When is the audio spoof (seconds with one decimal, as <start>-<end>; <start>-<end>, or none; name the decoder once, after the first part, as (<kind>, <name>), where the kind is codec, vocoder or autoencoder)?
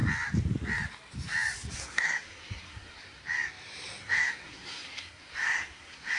1.7-3.2 (codec, SNAC); 4.0-6.2